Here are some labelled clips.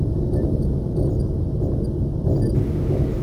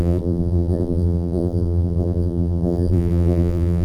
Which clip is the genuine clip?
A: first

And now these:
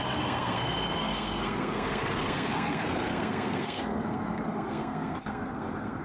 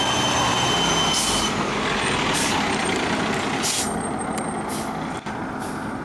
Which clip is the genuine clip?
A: second